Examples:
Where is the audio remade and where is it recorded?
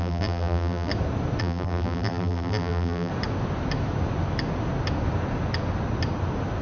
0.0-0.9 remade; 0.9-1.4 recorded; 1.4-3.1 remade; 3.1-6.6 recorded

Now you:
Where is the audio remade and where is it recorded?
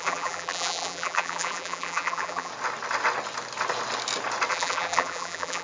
0.0-2.5 remade; 2.5-4.5 recorded; 4.5-5.6 remade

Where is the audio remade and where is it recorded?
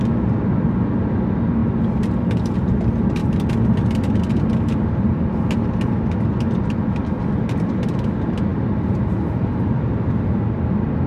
0.0-1.6 recorded; 1.6-2.6 remade; 2.6-3.2 recorded; 3.2-5.3 remade; 5.3-8.5 recorded; 8.5-10.4 remade; 10.4-11.1 recorded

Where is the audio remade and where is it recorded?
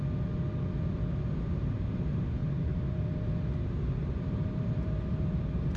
0.0-2.4 recorded; 2.4-3.1 remade; 3.1-4.0 recorded; 4.0-5.3 remade; 5.3-5.8 recorded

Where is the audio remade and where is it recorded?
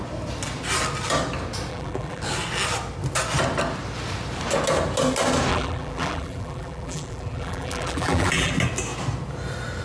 0.0-1.7 recorded; 1.7-2.2 remade; 2.2-5.5 recorded; 5.5-8.5 remade; 8.5-9.8 recorded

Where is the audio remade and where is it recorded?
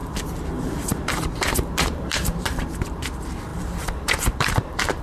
0.0-3.0 remade; 3.0-3.5 recorded; 3.5-5.0 remade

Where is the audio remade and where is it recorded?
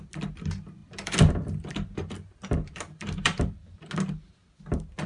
0.0-0.8 recorded; 0.8-3.9 remade; 3.9-5.1 recorded